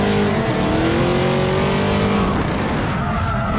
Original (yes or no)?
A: yes